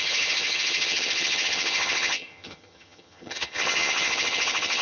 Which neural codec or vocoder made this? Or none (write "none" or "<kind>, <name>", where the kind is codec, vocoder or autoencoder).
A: vocoder, HiFi-GAN